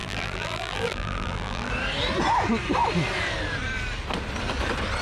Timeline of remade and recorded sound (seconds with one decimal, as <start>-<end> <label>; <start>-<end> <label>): 0.0-1.7 remade; 1.7-5.0 recorded